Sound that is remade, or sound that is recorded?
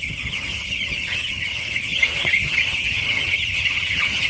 remade